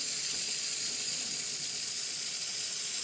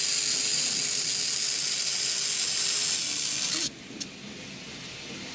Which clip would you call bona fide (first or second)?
second